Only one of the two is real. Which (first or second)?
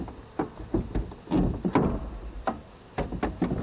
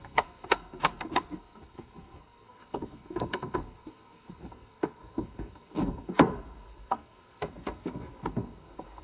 first